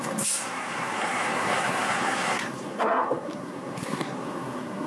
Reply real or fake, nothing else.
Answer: fake